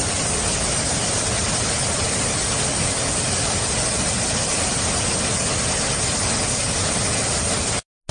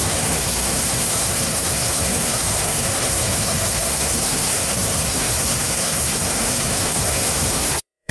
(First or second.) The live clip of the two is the first